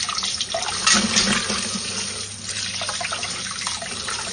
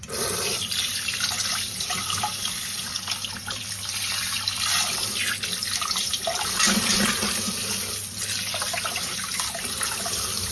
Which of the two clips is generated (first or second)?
second